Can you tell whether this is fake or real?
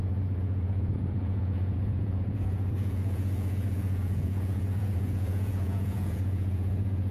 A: fake